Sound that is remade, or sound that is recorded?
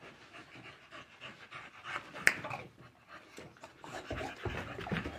recorded